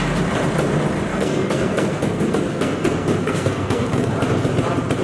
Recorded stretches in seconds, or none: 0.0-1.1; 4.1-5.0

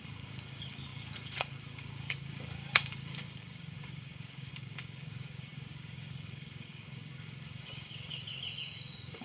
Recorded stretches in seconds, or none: none

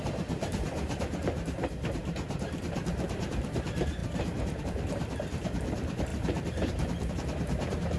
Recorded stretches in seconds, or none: none

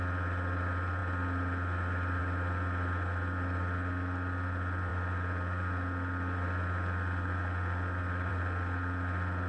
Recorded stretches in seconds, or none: 0.0-9.5

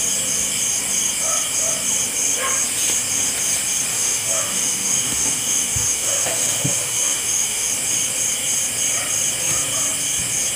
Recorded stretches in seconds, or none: 0.0-3.9; 7.7-10.6